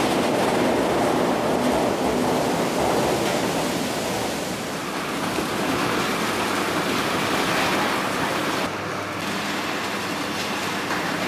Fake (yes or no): no